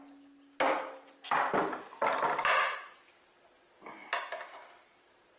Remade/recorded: recorded